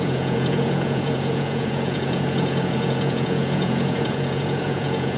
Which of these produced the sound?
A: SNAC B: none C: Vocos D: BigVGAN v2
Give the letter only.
C